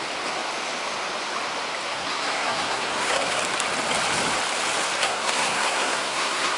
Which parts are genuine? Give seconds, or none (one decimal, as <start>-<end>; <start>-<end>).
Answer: 0.0-1.9; 3.4-5.0

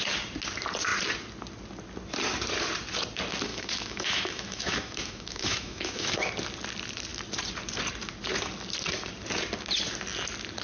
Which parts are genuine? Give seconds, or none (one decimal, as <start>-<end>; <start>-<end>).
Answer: 0.0-3.5; 6.3-10.6